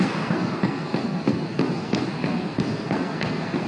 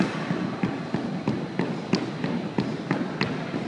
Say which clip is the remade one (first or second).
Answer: first